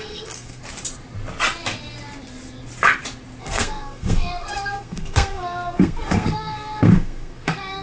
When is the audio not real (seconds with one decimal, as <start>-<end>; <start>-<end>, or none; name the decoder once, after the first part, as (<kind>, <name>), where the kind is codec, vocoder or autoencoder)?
0.0-0.6 (codec, SNAC); 3.4-7.8